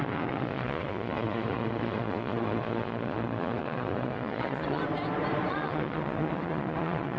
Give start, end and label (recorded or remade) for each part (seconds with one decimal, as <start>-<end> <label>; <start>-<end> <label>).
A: 0.0-4.8 remade; 4.8-5.5 recorded; 5.5-7.2 remade